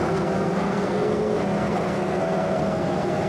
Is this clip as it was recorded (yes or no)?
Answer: no